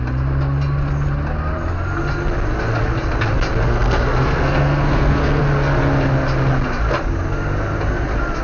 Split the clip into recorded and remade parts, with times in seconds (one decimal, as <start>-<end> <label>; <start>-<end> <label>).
0.0-3.7 recorded; 3.7-5.4 remade; 5.4-8.4 recorded